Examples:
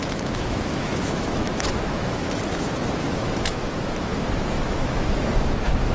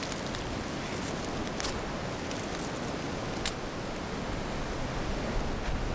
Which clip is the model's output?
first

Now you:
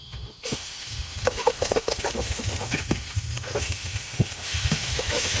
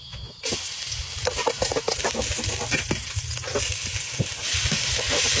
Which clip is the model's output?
first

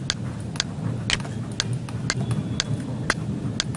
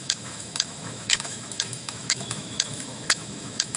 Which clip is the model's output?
second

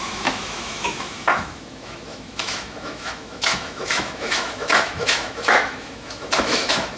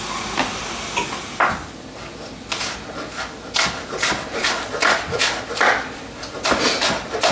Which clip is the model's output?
first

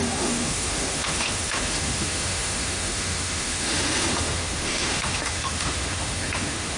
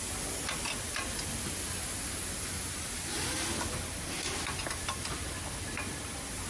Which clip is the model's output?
first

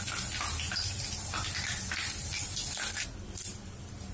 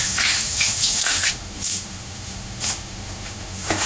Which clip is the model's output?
second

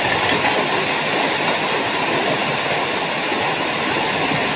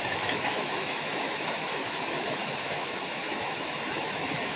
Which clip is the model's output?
second